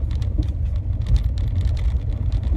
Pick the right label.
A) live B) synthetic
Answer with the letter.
A